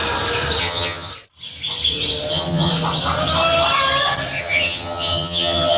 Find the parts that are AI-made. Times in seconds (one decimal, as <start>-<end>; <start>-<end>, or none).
0.6-1.1; 2.3-2.7; 4.4-5.8